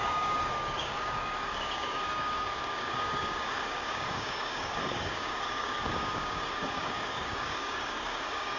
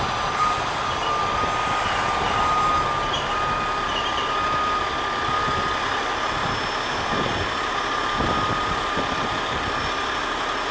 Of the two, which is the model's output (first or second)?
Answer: first